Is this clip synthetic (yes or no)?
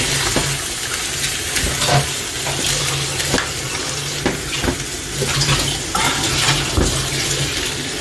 no